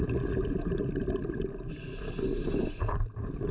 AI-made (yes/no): no